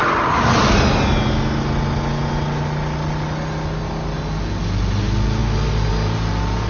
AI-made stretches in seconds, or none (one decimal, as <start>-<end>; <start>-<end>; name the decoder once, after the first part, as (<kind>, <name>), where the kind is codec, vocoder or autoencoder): none